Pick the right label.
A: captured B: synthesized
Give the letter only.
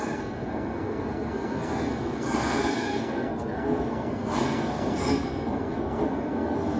B